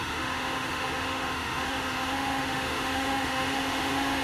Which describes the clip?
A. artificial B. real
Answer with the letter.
A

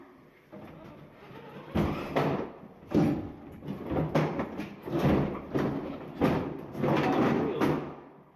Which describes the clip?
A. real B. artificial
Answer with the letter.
A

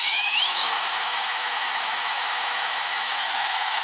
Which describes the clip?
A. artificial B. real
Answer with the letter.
A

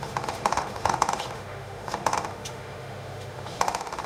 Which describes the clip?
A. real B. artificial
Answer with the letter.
B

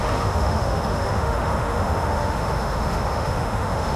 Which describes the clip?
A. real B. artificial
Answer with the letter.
B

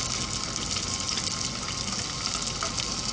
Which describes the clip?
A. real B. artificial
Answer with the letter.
A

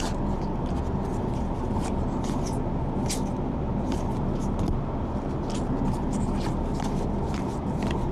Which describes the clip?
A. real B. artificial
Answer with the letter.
A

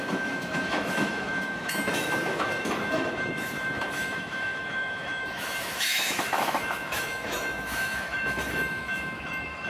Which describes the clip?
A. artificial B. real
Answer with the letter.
A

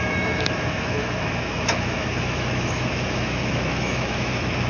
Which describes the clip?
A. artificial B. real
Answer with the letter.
A